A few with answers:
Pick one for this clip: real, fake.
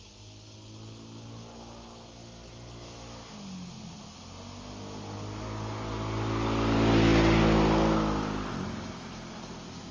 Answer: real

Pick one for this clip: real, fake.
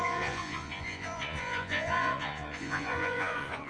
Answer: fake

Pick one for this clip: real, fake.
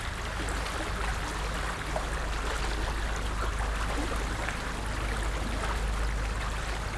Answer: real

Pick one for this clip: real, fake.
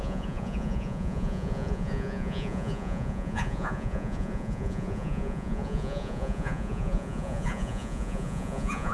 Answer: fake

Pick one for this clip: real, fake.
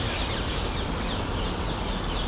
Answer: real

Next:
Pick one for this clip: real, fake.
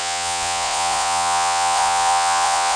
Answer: fake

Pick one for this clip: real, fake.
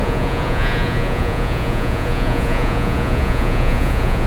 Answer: fake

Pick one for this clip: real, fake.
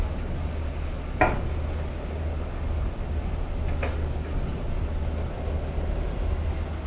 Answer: real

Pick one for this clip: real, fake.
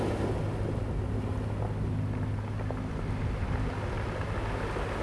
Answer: real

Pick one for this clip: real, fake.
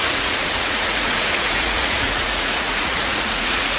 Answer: fake